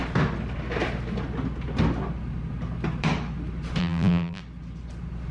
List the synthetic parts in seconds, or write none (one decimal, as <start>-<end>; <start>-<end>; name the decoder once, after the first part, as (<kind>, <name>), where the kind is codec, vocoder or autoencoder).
3.8-4.4 (vocoder, BigVGAN v2)